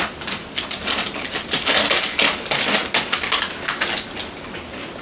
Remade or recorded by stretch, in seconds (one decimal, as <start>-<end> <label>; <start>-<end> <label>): 0.0-5.0 recorded